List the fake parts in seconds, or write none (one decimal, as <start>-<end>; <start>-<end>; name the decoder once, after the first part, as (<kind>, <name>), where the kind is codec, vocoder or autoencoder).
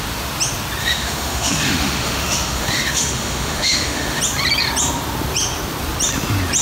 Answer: 0.8-4.2 (autoencoder, DAC-VAE)